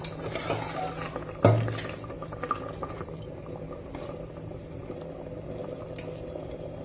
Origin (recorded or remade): recorded